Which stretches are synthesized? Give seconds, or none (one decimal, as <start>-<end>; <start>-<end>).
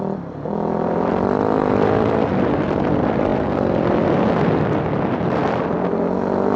none